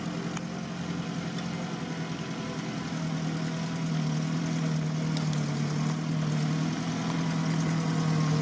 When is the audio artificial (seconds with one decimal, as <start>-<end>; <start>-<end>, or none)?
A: none